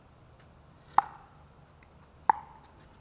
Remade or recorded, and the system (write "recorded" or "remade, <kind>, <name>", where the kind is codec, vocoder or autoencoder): recorded